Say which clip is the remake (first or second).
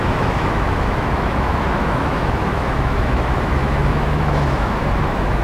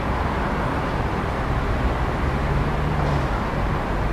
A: first